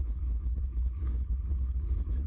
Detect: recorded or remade remade